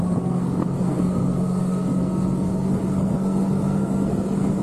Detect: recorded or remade remade